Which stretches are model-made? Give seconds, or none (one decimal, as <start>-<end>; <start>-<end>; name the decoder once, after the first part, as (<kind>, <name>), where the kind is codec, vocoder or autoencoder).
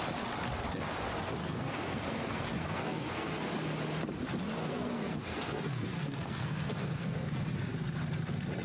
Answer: 1.4-3.5 (codec, SNAC); 4.6-7.7